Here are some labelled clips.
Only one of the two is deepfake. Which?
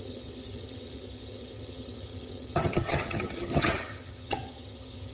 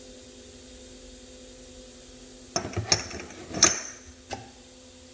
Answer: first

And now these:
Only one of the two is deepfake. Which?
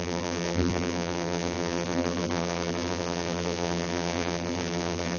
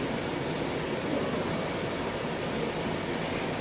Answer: first